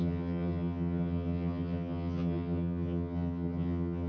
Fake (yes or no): yes